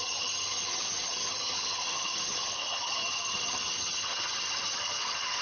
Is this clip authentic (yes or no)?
no